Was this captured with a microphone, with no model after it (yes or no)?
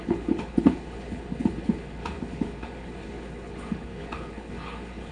no